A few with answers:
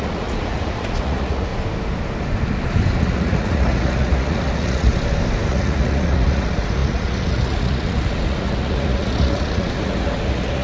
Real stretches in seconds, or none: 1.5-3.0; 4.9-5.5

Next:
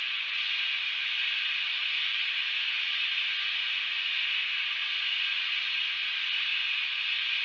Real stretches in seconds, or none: 0.0-7.4

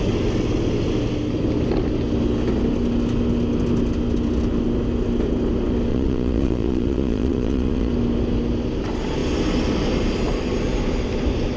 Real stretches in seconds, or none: 0.0-5.9; 7.9-11.6

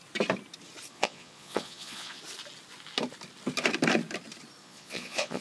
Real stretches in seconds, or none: 0.0-0.9; 2.2-4.6

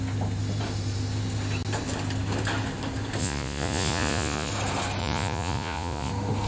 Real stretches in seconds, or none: 0.0-3.2; 4.5-5.0; 6.1-6.5

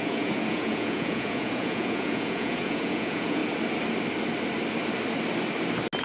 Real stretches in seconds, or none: 3.4-6.0

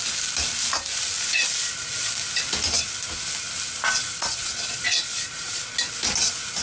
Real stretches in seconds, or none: 0.0-4.1; 5.6-6.6